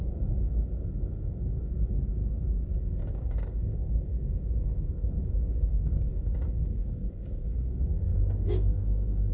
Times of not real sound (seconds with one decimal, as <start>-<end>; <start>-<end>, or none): 0.0-2.2; 3.0-9.3